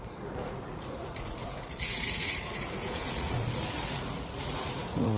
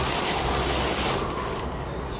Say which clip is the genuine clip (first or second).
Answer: second